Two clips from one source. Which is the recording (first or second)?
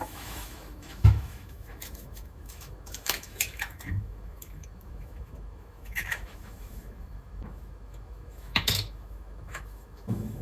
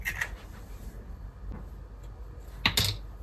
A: second